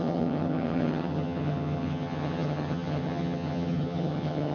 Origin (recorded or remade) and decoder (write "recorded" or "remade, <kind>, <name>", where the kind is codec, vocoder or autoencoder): remade, vocoder, HiFi-GAN